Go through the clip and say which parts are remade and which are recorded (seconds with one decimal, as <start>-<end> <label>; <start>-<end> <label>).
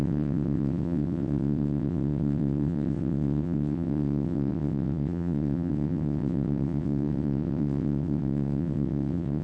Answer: 0.0-9.4 remade